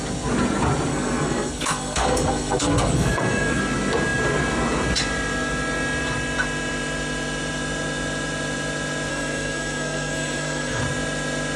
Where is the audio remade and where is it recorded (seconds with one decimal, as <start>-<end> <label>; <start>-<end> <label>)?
0.0-0.9 recorded; 0.9-3.6 remade; 3.6-9.1 recorded; 9.1-10.8 remade; 10.8-11.6 recorded